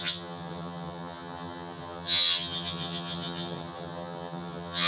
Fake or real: fake